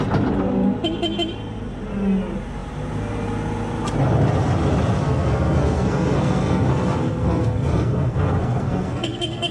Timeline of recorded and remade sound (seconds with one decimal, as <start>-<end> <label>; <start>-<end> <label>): 0.0-5.0 recorded; 5.0-9.5 remade